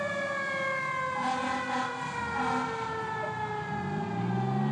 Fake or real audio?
real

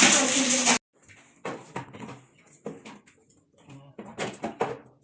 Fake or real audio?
real